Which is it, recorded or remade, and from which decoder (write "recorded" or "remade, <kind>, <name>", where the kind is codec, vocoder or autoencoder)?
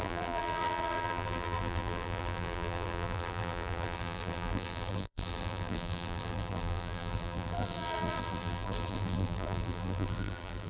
remade, vocoder, BigVGAN v2